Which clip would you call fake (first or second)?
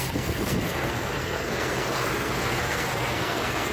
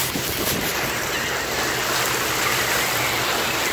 first